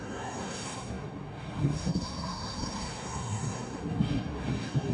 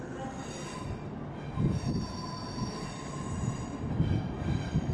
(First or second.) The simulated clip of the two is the first